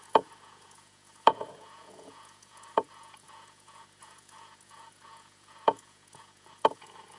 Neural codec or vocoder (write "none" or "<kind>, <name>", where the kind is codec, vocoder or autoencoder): vocoder, Vocos